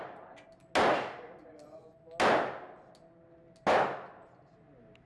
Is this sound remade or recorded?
recorded